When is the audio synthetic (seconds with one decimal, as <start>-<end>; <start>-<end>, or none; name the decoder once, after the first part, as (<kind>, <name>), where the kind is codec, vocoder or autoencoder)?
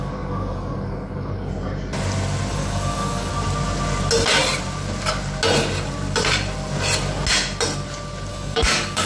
0.0-1.5 (codec, DAC); 2.5-3.3; 8.3-9.1